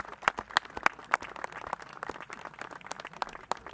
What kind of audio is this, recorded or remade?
recorded